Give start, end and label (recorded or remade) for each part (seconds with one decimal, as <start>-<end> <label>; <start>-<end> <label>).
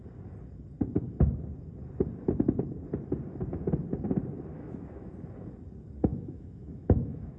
0.0-4.5 recorded; 4.5-5.1 remade; 5.1-6.1 recorded; 6.1-7.4 remade